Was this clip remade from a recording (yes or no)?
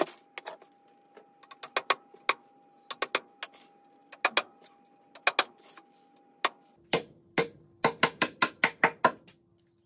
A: no